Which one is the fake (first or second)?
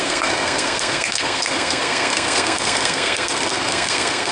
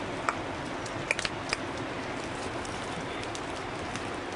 first